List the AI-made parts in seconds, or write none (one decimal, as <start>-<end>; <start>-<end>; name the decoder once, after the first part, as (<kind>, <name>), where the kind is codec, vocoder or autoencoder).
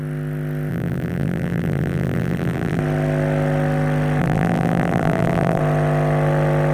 0.7-2.8 (vocoder, BigVGAN v2); 4.2-5.6